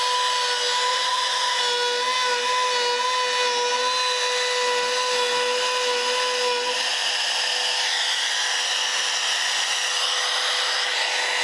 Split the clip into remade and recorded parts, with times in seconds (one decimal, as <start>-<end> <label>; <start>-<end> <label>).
0.0-0.9 recorded; 0.9-1.6 remade; 1.6-11.4 recorded